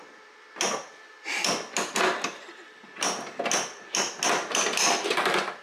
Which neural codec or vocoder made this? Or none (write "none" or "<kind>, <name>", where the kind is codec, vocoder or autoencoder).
none